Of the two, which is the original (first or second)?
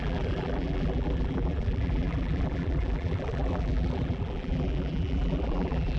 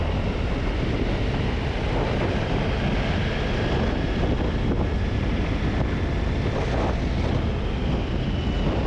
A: second